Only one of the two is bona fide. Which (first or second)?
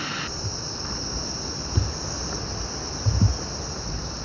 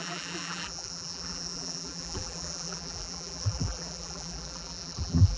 first